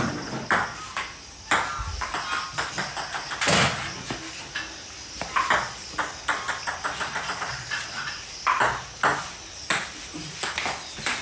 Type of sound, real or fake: real